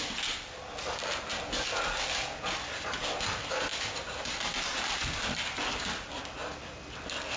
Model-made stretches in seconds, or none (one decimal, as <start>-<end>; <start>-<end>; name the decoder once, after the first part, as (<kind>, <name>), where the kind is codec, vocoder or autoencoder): 3.7-6.2 (vocoder, BigVGAN v2)